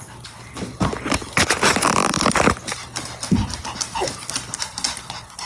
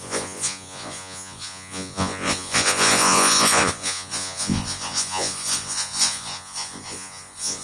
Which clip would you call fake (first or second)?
second